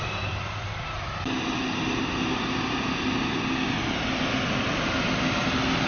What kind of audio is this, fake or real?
real